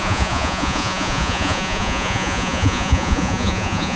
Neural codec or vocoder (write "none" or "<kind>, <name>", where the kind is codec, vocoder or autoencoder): vocoder, Vocos